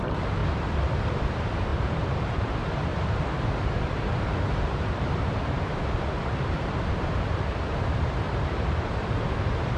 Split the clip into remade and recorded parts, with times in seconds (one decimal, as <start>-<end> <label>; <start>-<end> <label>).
0.0-0.4 remade; 0.4-1.1 recorded; 1.1-2.9 remade; 2.9-4.9 recorded; 4.9-9.8 remade